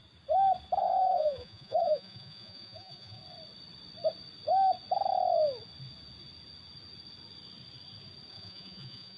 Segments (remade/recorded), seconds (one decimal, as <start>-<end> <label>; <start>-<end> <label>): 0.0-0.8 recorded; 0.8-3.2 remade; 3.2-8.3 recorded; 8.3-9.2 remade